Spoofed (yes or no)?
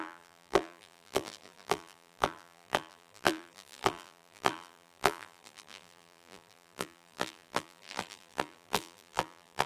yes